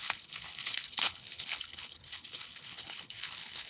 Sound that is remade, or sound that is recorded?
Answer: remade